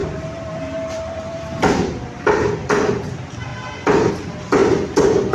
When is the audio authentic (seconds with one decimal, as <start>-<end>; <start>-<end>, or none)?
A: 1.8-5.3